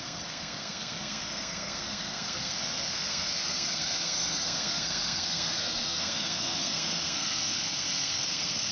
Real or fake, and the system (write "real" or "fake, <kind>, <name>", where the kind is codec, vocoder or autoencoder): fake, codec, SNAC